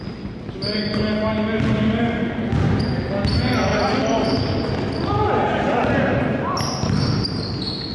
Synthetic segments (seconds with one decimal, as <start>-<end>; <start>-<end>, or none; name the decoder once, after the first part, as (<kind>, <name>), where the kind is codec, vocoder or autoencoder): none